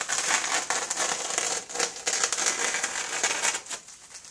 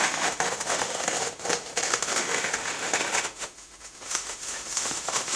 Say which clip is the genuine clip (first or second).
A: first